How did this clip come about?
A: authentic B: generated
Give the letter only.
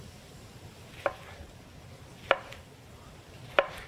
A